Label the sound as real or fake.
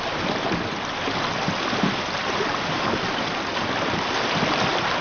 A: real